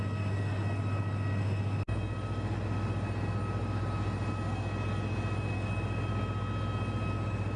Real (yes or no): yes